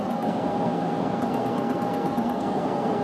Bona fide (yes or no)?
no